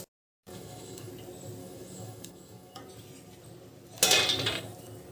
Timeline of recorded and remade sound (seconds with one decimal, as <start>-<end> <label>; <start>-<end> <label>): 0.0-0.5 recorded; 0.5-1.1 remade; 1.1-1.6 recorded; 1.6-2.8 remade; 2.8-5.1 recorded